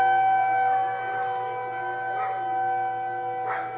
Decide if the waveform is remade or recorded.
recorded